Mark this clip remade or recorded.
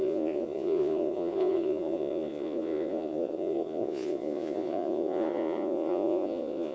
remade